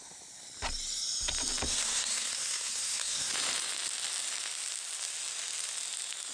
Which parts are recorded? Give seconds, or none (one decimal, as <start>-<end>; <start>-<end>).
0.0-1.7; 3.3-6.3